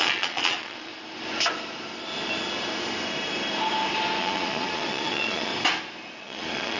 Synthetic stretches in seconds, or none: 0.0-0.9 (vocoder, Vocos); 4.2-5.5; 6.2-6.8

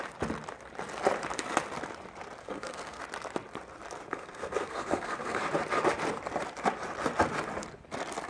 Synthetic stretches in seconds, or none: 2.4-3.0 (codec, SNAC); 4.1-5.4

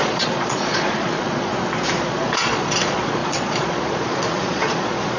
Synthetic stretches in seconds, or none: 0.0-1.5 (vocoder, Vocos); 2.0-5.2

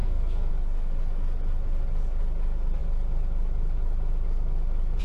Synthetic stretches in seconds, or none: 0.0-0.5 (codec, SNAC)

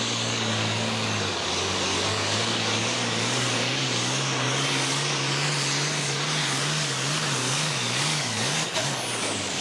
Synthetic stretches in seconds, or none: 0.0-5.3 (codec, DAC); 6.0-9.6

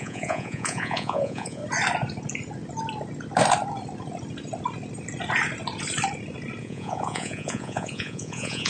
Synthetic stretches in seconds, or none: 0.0-1.6 (vocoder, Vocos); 6.6-8.7

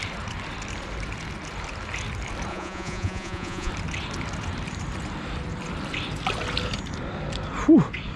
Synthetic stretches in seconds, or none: 2.5-3.7 (vocoder, Vocos)

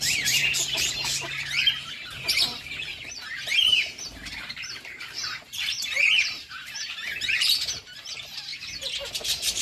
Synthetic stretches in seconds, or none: 0.0-0.4 (vocoder, BigVGAN v2); 1.7-8.5; 9.1-9.6